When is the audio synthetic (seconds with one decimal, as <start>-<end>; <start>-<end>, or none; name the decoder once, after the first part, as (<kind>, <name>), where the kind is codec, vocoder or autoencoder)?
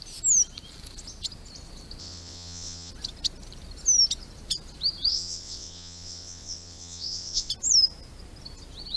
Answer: 2.0-2.9 (vocoder, WaveNeXt); 5.1-7.5